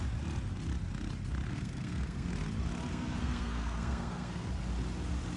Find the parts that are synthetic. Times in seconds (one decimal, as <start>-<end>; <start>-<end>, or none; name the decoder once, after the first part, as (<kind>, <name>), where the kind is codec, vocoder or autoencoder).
1.5-2.3 (codec, SNAC); 2.9-4.5